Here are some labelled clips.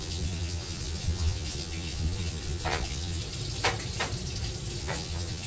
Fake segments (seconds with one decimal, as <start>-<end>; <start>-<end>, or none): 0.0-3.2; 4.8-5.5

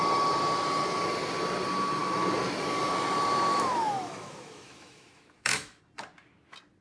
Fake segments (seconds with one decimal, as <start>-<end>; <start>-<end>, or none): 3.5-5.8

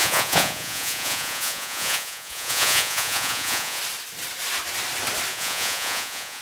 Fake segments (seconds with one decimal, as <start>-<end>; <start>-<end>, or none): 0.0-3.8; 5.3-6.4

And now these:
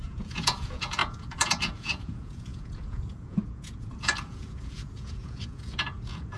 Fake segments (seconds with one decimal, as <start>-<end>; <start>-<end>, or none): 0.0-6.4

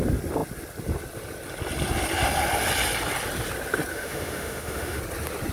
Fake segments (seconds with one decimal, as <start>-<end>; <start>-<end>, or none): 3.9-5.0

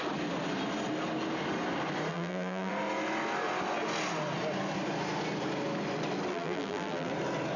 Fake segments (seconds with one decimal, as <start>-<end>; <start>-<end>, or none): 2.1-2.7; 6.3-7.1